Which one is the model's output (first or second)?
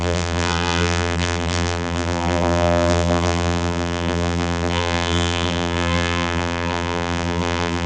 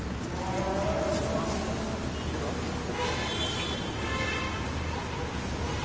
first